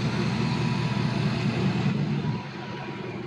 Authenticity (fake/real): real